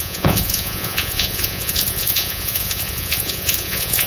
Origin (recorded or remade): remade